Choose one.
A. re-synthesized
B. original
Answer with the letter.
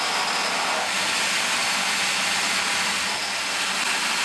B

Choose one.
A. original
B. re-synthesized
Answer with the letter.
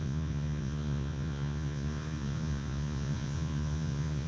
B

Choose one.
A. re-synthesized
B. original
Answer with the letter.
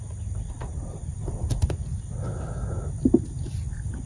B